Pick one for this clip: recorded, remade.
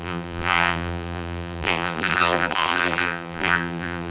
remade